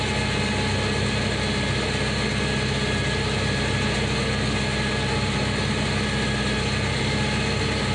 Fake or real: real